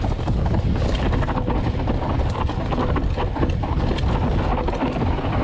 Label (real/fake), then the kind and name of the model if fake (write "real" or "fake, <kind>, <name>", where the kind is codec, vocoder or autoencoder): real